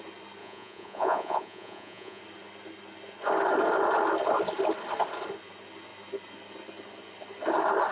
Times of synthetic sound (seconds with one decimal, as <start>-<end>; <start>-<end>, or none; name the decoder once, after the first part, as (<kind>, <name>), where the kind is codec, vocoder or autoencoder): 0.4-2.2 (vocoder, Vocos)